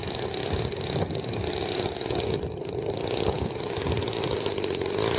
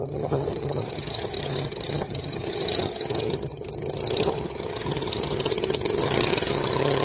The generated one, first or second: second